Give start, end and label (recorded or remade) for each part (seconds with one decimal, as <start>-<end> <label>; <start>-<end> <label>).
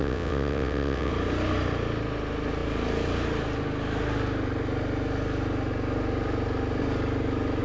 0.0-1.1 remade; 1.1-7.6 recorded